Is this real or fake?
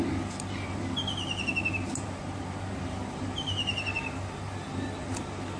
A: real